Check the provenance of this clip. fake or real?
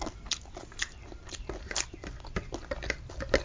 real